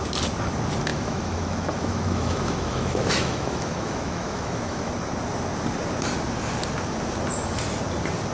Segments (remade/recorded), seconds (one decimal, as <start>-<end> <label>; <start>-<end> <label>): 0.0-0.9 recorded; 0.9-4.9 remade; 4.9-8.3 recorded